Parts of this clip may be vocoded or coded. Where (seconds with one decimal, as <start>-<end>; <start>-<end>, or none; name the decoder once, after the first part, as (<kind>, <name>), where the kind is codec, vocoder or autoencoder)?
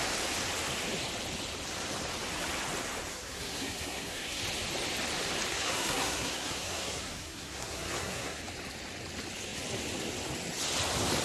3.1-4.4 (codec, SNAC); 5.5-8.4